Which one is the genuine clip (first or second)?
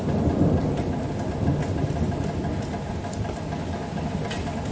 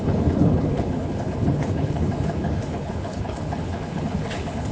first